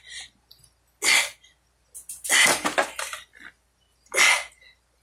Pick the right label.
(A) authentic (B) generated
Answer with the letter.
A